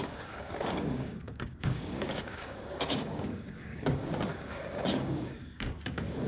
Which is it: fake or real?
fake